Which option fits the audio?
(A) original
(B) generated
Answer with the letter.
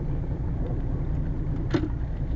A